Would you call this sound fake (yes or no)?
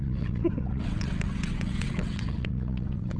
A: yes